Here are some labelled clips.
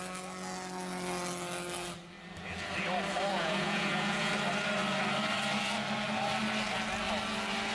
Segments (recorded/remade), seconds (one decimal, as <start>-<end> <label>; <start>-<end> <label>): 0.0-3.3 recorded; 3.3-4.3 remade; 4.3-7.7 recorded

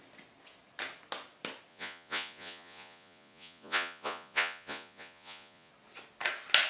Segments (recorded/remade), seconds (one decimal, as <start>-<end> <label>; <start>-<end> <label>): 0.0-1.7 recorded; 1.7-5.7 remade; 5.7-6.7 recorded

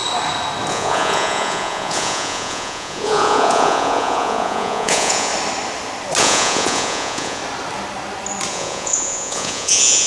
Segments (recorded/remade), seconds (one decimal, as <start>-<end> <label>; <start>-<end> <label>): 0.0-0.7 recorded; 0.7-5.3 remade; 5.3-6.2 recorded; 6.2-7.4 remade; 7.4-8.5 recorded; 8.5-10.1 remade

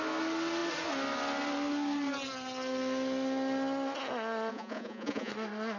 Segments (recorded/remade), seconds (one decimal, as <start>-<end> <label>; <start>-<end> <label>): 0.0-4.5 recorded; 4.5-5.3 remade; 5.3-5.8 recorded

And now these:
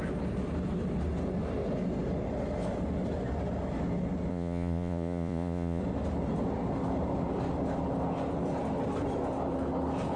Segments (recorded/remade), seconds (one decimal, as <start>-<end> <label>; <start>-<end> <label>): 0.0-4.3 recorded; 4.3-5.8 remade; 5.8-10.2 recorded

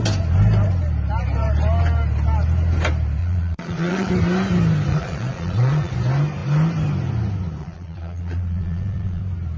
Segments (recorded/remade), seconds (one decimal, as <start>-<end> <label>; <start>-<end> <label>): 0.0-3.2 recorded; 3.2-4.1 remade; 4.1-4.9 recorded; 4.9-5.9 remade; 5.9-7.6 recorded; 7.6-9.2 remade; 9.2-9.6 recorded

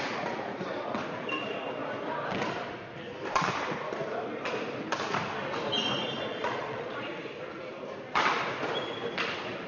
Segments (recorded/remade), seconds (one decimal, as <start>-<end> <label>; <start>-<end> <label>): 0.0-6.3 recorded; 6.3-7.1 remade; 7.1-9.7 recorded

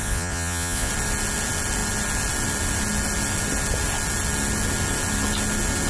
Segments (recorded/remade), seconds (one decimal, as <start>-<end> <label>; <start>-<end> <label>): 0.0-0.9 remade; 0.9-5.9 recorded